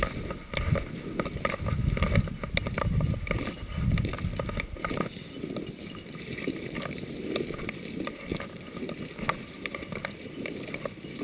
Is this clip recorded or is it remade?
recorded